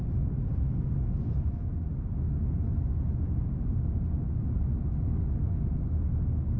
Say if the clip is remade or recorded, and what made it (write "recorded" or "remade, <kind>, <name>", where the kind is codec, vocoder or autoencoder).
recorded